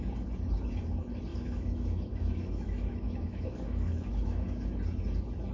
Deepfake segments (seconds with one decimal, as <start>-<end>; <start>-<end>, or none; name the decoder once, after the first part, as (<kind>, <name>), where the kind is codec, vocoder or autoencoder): 1.3-4.6 (autoencoder, DAC-VAE)